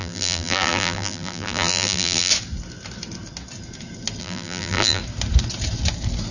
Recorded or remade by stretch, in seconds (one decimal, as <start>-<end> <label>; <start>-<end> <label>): 0.0-2.3 remade; 2.3-4.2 recorded; 4.2-5.0 remade; 5.0-6.3 recorded

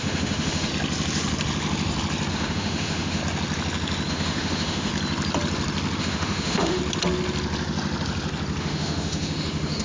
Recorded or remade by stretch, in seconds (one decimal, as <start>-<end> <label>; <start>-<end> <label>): 0.0-0.7 remade; 0.7-2.3 recorded; 2.3-3.2 remade; 3.2-4.1 recorded; 4.1-4.9 remade; 4.9-6.0 recorded; 6.0-6.8 remade; 6.8-8.6 recorded; 8.6-9.8 remade

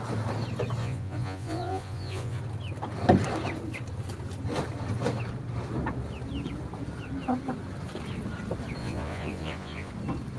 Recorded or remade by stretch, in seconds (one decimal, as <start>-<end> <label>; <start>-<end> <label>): 0.0-0.8 recorded; 0.8-2.4 remade; 2.4-8.8 recorded; 8.8-9.9 remade; 9.9-10.4 recorded

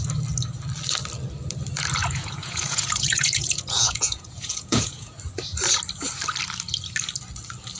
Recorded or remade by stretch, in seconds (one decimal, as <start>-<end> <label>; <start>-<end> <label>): 0.0-2.0 recorded; 2.0-5.2 remade; 5.2-7.8 recorded

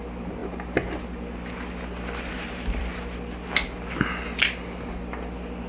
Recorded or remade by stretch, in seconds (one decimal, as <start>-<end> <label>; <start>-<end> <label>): 0.0-5.7 recorded

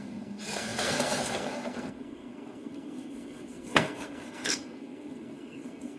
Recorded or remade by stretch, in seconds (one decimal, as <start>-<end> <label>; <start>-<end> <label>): 0.0-6.0 remade

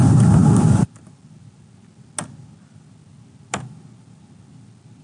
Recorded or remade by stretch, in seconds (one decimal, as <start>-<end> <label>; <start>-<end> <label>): 0.0-5.0 recorded